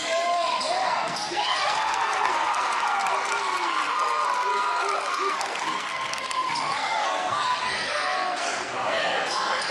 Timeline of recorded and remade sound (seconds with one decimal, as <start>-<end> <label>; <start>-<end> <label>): 0.0-9.7 remade